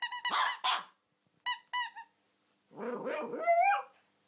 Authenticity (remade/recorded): recorded